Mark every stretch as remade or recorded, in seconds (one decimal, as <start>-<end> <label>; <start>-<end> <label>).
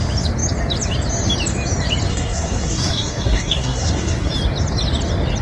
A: 0.0-2.1 recorded; 2.1-4.3 remade; 4.3-5.4 recorded